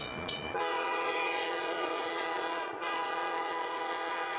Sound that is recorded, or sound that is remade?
remade